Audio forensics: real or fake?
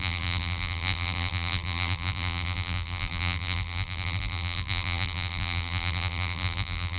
fake